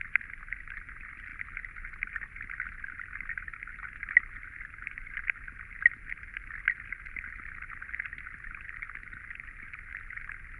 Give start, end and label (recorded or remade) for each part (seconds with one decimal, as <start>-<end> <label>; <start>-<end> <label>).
0.0-10.6 recorded